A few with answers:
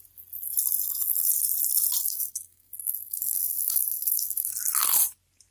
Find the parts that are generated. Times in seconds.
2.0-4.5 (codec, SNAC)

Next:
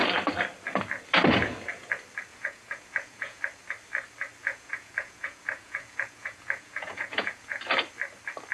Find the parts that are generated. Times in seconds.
2.3-3.4 (vocoder, Vocos); 4.4-7.6

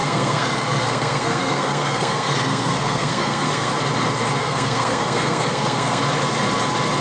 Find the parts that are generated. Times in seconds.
0.0-3.7 (codec, SNAC); 4.4-6.0

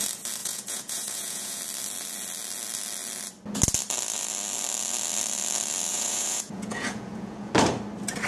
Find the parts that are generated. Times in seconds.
0.4-1.6 (vocoder, Vocos); 5.9-7.5

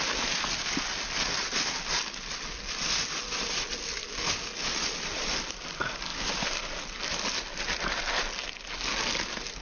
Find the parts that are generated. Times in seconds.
none

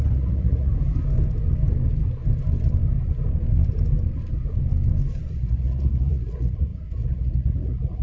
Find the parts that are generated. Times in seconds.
0.0-0.7 (vocoder, Vocos); 5.4-8.0

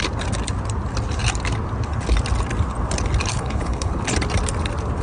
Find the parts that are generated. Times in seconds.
3.3-4.0 (codec, HILCodec)

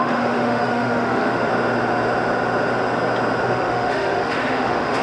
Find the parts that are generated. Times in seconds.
0.0-1.5 (autoencoder, DAC-VAE); 3.4-5.0